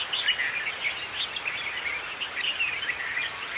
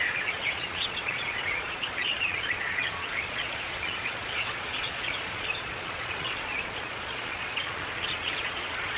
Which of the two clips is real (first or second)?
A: first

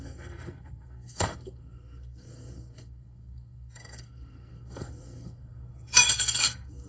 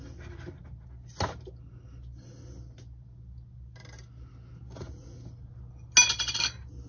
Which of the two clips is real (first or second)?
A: second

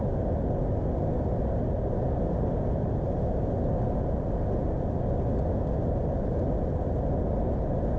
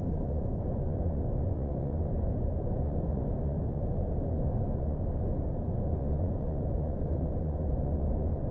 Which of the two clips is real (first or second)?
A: first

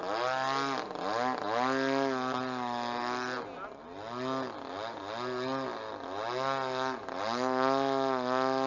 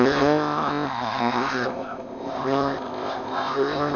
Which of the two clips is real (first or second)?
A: first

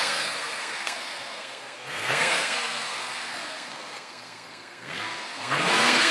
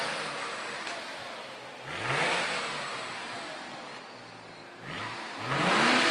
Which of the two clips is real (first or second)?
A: second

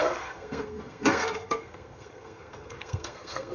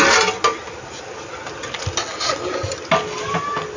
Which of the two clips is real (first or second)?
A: second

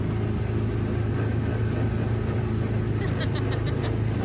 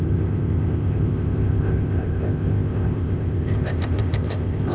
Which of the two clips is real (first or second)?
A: first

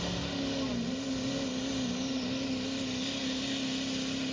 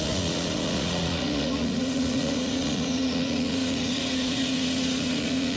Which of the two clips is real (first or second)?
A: first